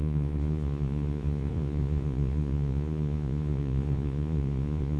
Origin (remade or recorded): remade